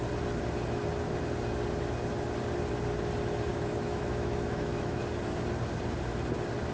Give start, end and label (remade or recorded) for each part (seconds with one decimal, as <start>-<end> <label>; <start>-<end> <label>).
0.0-3.5 recorded; 3.5-5.0 remade; 5.0-6.7 recorded